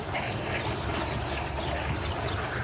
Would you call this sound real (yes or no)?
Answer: yes